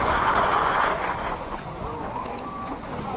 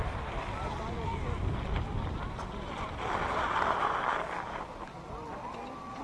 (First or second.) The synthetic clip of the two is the first